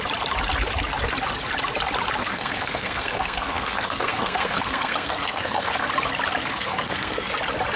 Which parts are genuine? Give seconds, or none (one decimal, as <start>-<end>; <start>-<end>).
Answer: 0.0-2.2; 5.9-6.4; 7.3-7.8